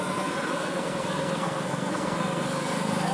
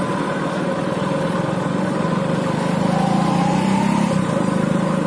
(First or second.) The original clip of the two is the second